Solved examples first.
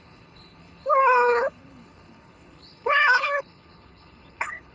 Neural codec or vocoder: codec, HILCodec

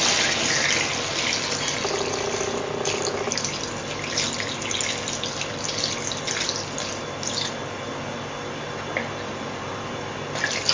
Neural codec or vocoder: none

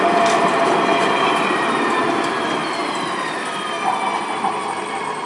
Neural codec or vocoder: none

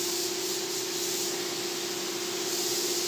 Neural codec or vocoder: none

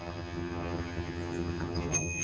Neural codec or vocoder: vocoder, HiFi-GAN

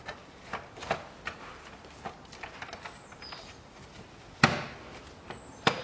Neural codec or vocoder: none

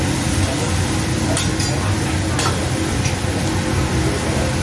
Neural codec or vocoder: none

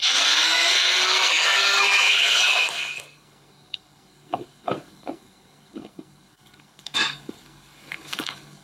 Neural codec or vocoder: codec, SNAC